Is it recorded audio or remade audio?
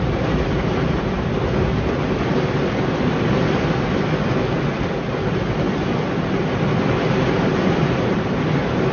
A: recorded